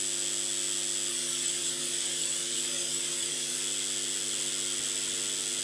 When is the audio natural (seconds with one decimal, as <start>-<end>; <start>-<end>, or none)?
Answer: 0.0-1.1; 3.6-5.6